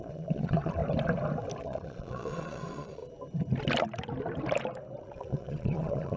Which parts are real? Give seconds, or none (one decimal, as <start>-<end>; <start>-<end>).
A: 0.8-1.6; 3.0-5.0